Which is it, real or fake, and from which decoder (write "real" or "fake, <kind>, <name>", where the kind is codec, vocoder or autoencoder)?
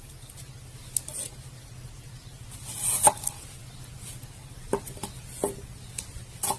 real